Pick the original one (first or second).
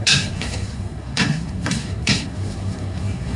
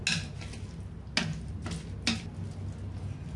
second